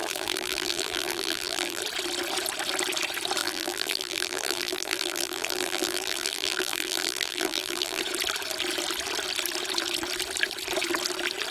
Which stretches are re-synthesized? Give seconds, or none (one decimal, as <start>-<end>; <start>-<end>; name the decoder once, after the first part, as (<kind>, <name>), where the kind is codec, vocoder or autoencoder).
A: 0.0-1.8 (vocoder, BigVGAN v2); 3.4-8.0